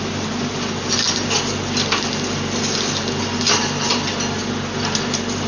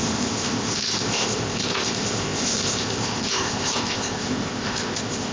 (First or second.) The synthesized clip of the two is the second